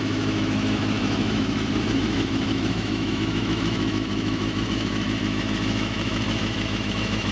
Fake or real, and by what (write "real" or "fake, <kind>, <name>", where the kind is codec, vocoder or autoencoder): fake, autoencoder, DAC-VAE